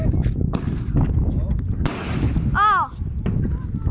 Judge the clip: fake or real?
real